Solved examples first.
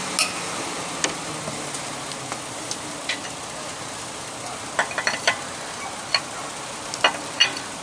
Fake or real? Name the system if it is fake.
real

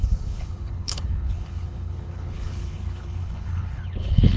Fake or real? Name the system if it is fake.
fake, codec, HILCodec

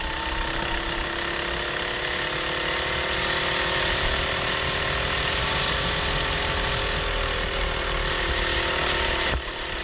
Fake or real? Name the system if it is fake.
real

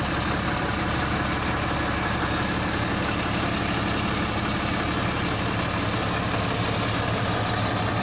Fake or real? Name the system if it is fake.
real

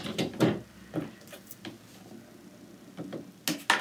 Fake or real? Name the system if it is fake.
real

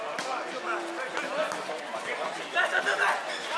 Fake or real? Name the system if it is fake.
real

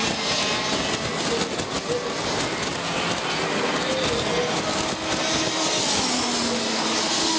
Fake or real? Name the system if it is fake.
real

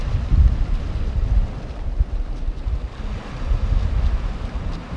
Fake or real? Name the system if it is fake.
real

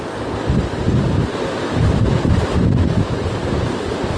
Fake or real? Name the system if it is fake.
real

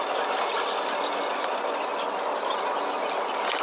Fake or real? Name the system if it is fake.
real